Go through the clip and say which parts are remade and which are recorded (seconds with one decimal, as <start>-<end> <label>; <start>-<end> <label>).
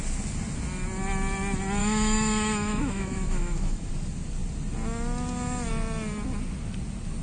0.0-1.8 recorded; 1.8-3.9 remade; 3.9-7.2 recorded